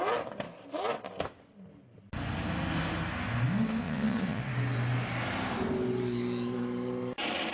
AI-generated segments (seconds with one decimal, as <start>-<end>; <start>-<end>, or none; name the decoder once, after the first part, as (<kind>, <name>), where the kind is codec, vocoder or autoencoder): 3.8-4.4 (vocoder, Vocos)

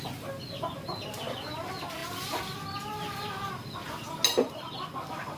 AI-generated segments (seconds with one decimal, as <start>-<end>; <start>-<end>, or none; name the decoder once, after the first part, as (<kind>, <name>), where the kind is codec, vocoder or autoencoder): none

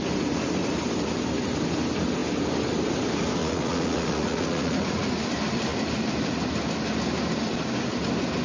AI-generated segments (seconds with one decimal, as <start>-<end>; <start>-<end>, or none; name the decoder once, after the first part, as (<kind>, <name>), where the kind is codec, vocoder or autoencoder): 3.4-5.2 (vocoder, Vocos)

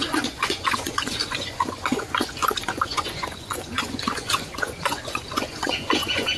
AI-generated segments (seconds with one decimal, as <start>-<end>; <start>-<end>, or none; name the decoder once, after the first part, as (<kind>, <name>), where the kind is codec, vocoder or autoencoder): 0.0-6.4 (vocoder, Vocos)

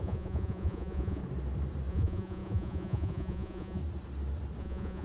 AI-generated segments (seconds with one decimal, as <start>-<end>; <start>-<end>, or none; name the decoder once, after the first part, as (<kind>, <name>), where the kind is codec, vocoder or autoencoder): 0.0-1.2 (vocoder, Vocos); 1.9-3.8; 4.6-5.0